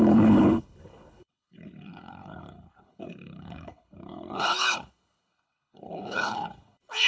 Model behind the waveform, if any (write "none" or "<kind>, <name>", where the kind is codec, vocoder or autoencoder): codec, HILCodec